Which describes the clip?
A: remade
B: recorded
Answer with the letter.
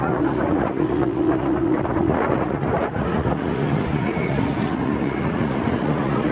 A